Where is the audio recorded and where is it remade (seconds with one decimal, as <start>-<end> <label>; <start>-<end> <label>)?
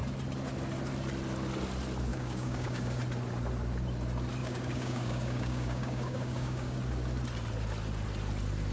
0.0-2.1 recorded; 2.1-3.0 remade; 3.0-4.4 recorded; 4.4-6.8 remade; 6.8-8.7 recorded